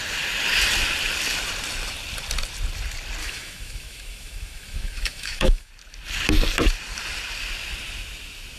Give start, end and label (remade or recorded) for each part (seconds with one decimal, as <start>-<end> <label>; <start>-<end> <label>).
0.0-3.2 recorded; 3.2-5.7 remade; 5.7-8.6 recorded